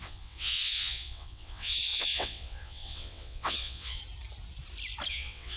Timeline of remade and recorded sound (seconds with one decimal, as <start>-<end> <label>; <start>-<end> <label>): 0.0-4.0 remade; 4.0-5.1 recorded; 5.1-5.6 remade

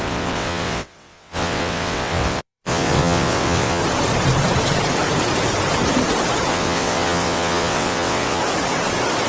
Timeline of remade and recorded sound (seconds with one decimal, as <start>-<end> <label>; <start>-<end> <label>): 0.0-3.8 remade; 3.8-6.5 recorded; 6.5-8.4 remade; 8.4-9.3 recorded